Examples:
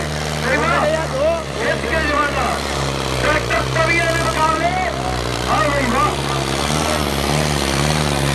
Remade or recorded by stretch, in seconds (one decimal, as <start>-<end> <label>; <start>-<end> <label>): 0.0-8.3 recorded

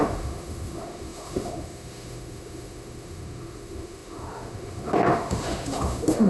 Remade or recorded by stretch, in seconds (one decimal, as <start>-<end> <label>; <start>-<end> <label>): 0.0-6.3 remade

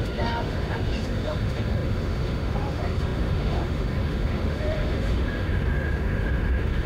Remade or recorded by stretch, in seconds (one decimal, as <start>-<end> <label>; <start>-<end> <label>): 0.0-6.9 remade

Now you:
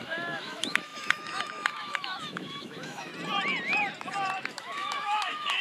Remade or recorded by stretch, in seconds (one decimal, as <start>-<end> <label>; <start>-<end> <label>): 0.0-3.1 remade; 3.1-4.5 recorded; 4.5-5.6 remade

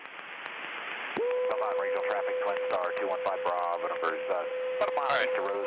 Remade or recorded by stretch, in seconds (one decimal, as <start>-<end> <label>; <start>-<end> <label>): 0.0-4.5 recorded; 4.5-5.2 remade; 5.2-5.7 recorded

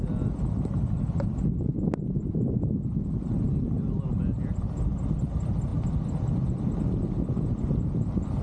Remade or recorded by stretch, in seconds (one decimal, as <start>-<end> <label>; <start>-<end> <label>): 0.0-8.4 recorded

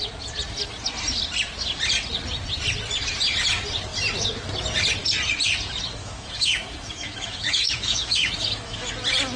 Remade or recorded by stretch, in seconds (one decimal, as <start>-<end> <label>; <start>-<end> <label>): 0.0-6.0 recorded; 6.0-8.9 remade; 8.9-9.4 recorded